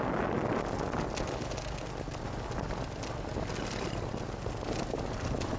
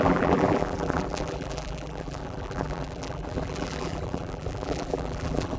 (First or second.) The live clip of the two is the first